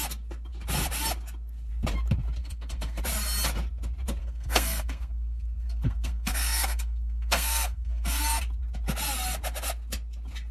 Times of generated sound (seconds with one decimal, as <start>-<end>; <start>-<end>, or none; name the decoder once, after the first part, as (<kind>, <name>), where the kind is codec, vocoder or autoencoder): 2.4-3.0 (codec, SNAC); 4.2-8.4